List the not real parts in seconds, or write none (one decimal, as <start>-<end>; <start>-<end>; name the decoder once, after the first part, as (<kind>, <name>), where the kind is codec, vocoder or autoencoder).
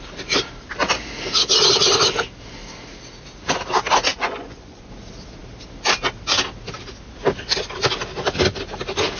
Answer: 4.1-4.9 (vocoder, Vocos)